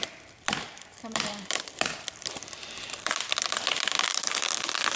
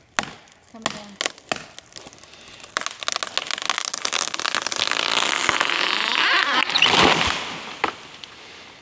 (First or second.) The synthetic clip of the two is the first